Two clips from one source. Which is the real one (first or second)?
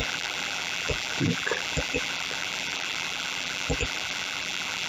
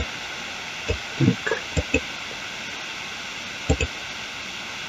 second